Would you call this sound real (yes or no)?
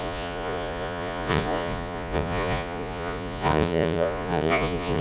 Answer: no